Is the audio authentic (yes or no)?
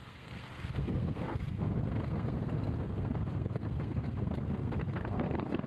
no